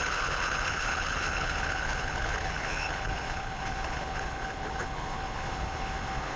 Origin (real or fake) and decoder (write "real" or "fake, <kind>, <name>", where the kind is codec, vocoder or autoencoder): fake, codec, HILCodec